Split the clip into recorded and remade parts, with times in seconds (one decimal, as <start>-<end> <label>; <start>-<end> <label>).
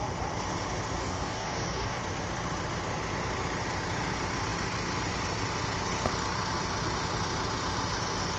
0.0-1.0 recorded; 1.0-2.0 remade; 2.0-8.4 recorded